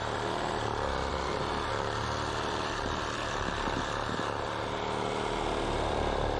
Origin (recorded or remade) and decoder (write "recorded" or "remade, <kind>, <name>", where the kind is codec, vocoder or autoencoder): recorded